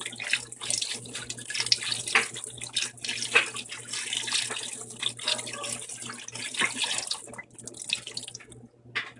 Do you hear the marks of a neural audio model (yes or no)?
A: no